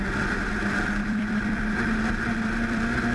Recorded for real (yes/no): no